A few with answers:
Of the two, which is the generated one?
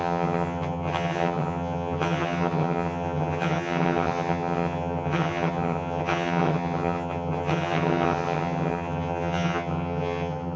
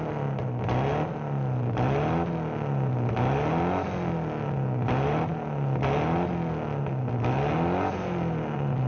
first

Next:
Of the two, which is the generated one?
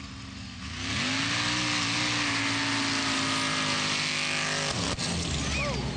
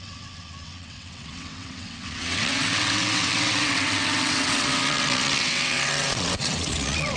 second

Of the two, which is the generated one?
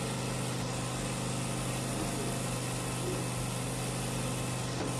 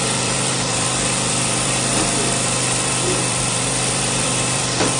second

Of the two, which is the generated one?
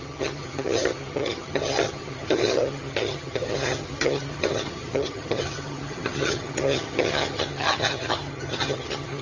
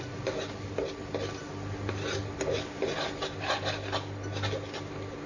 first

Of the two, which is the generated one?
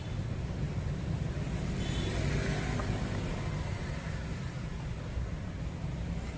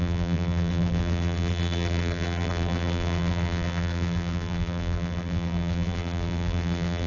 second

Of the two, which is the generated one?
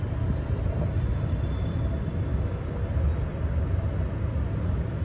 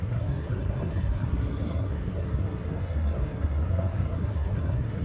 second